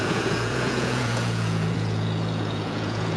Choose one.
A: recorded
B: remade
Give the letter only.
B